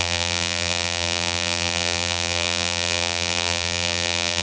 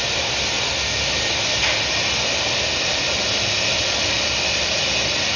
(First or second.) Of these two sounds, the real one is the second